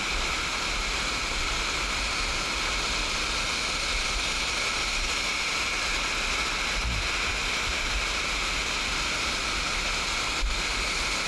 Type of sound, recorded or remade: recorded